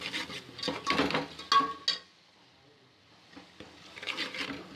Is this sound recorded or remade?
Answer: recorded